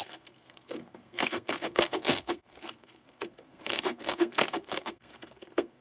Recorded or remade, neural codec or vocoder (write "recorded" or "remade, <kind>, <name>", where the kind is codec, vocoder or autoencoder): remade, codec, SNAC